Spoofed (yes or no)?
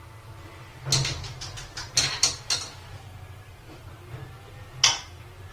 no